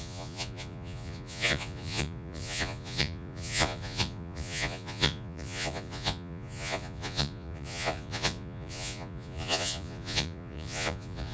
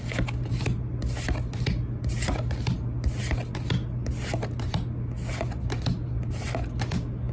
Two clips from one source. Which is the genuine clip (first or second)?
second